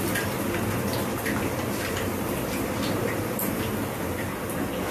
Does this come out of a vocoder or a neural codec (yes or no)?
no